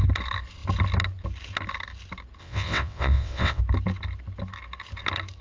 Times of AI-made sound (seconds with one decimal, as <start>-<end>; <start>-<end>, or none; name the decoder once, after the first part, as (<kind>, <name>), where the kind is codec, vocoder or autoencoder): 2.4-3.6 (vocoder, WaveNeXt)